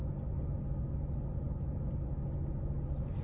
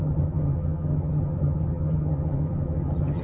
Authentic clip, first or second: first